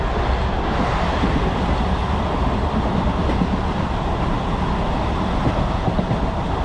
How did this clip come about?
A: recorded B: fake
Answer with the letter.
A